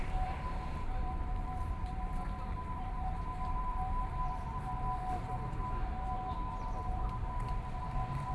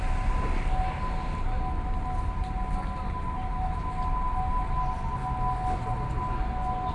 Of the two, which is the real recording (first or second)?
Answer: second